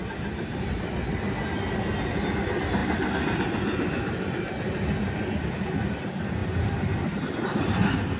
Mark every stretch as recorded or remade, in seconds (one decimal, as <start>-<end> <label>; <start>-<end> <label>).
0.0-6.4 recorded; 6.4-7.2 remade; 7.2-8.2 recorded